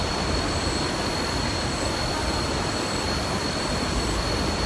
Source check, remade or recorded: recorded